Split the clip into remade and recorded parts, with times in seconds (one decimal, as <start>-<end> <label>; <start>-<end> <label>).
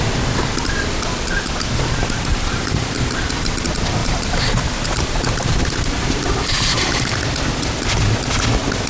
0.0-2.3 recorded; 2.3-3.3 remade; 3.3-4.0 recorded; 4.0-7.2 remade; 7.2-8.9 recorded